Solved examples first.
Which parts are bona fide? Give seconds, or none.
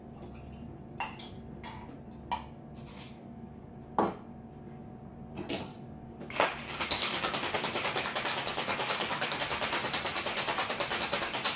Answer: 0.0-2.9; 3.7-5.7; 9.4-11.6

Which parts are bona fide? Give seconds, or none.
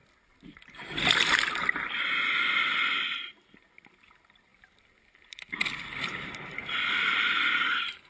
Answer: 0.0-8.1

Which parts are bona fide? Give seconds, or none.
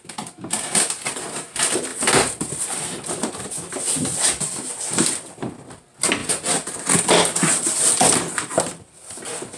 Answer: 0.0-1.9; 5.3-6.2; 8.1-9.6